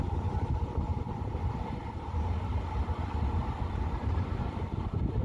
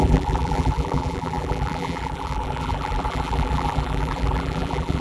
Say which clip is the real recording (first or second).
first